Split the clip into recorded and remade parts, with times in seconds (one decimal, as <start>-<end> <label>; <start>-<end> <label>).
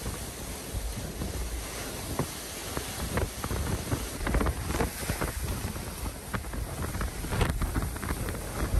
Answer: 0.0-2.6 recorded; 2.6-4.9 remade; 4.9-8.8 recorded